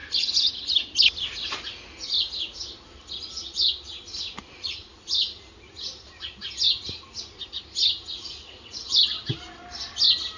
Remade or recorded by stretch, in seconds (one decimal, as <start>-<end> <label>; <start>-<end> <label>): 0.0-0.6 remade; 0.6-10.4 recorded